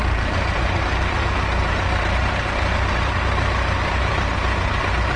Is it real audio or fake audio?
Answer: fake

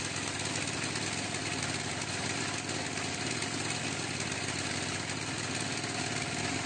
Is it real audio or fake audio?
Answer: real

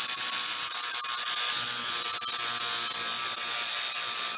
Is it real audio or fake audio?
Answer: real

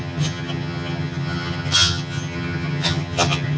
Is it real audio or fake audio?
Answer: fake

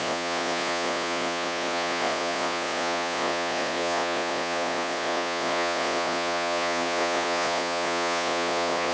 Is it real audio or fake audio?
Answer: fake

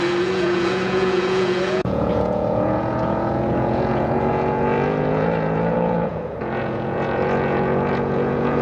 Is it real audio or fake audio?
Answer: fake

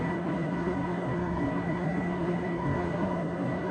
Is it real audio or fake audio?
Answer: fake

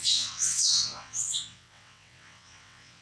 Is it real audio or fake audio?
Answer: fake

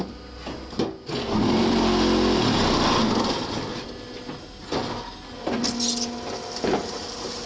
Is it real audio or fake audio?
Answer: real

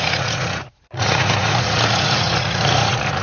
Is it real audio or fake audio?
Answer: fake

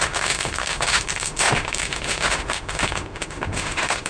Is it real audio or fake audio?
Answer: fake